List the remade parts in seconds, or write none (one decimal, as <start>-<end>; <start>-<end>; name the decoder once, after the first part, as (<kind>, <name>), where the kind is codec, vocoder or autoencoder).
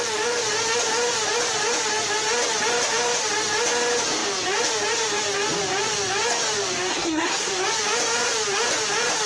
6.9-7.5 (codec, SNAC)